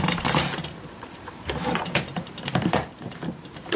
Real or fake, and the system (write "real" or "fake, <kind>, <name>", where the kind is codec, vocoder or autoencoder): fake, vocoder, BigVGAN v2